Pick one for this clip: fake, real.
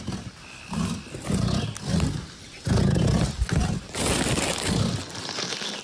real